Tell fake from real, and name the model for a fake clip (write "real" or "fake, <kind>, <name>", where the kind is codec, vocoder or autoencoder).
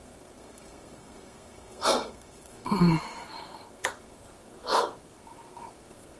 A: fake, codec, SNAC